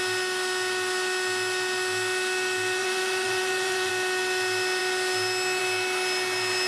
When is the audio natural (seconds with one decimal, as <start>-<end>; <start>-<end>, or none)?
0.0-2.8; 3.9-6.7